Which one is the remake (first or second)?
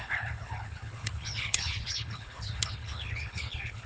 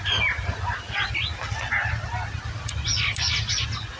first